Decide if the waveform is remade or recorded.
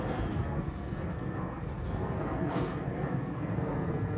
remade